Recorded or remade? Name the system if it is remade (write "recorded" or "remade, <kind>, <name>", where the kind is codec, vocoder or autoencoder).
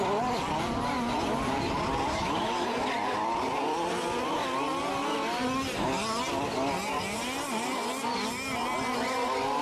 recorded